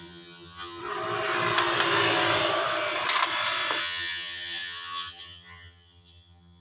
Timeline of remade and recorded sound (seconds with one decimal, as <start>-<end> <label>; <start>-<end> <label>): 0.0-0.8 remade; 0.8-3.8 recorded; 3.8-6.6 remade

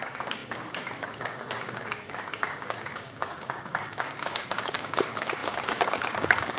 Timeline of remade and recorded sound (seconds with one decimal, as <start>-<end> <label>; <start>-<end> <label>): 0.0-6.6 remade